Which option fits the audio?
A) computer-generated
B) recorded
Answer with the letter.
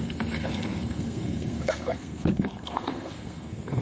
A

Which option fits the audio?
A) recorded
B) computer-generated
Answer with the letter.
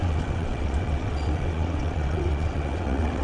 B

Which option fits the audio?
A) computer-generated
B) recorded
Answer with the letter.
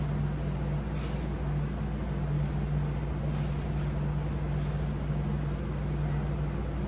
B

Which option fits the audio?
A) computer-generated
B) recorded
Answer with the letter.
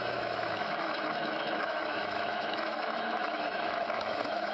A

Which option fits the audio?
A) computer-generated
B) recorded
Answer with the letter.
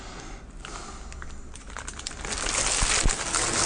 B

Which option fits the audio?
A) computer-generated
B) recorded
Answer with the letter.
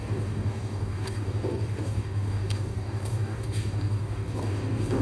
A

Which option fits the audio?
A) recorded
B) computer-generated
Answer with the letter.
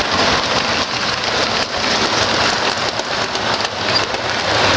A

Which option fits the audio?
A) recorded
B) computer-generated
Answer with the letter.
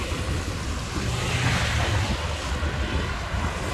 A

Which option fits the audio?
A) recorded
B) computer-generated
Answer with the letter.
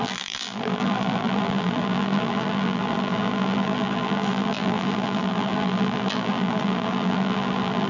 B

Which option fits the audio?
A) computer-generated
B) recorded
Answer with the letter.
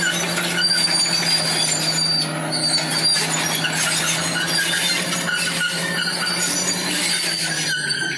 B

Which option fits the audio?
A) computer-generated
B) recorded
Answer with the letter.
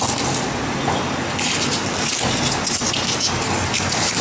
B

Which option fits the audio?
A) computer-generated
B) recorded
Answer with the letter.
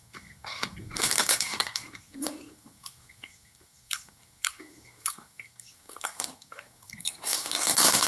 A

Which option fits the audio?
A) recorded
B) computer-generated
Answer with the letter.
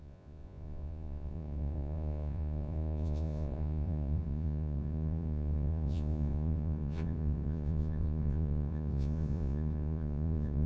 B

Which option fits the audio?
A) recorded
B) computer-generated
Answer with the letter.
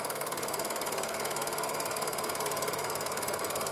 B